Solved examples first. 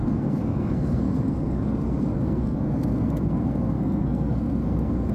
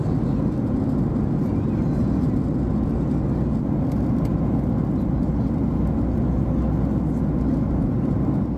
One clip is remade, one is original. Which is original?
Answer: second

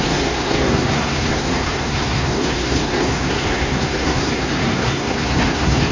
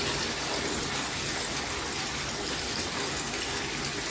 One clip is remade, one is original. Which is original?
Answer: second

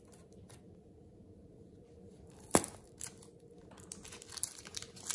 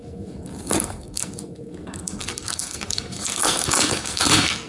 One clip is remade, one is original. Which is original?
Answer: first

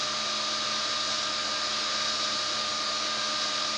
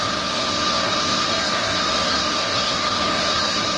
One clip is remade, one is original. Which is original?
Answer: first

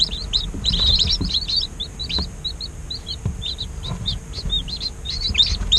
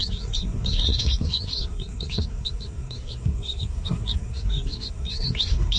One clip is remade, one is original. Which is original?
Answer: first